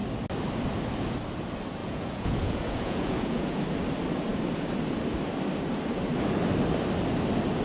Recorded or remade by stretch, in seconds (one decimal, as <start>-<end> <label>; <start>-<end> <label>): 0.0-1.8 recorded; 1.8-3.6 remade; 3.6-7.6 recorded